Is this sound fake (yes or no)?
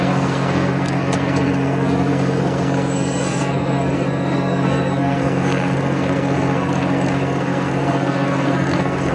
yes